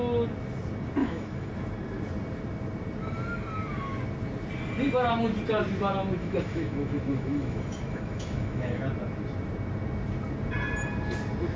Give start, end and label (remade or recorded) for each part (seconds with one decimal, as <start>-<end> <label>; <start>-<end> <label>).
0.0-1.0 recorded; 1.0-1.5 remade; 1.5-6.2 recorded; 6.2-8.8 remade; 8.8-11.6 recorded